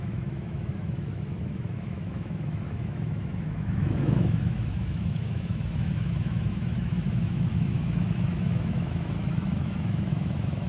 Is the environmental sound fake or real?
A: fake